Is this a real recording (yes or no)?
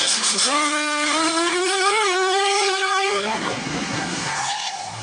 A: no